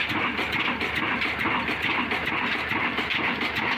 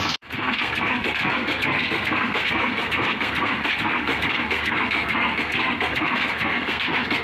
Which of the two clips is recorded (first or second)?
first